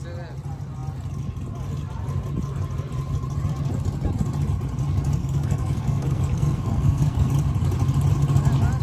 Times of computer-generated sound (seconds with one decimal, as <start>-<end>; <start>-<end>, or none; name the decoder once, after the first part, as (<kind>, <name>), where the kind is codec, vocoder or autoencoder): 5.2-7.3 (codec, SNAC)